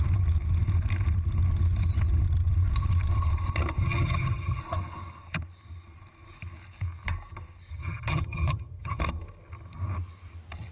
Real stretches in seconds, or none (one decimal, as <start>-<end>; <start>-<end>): 0.0-3.8; 4.6-7.7; 9.0-10.7